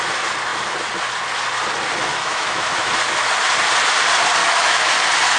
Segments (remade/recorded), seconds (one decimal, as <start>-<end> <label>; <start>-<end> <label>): 0.0-2.1 recorded; 2.1-2.9 remade; 2.9-4.4 recorded; 4.4-4.9 remade; 4.9-5.4 recorded